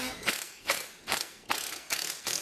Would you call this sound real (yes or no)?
no